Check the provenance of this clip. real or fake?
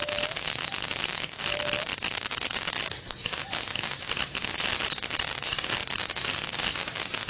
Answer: real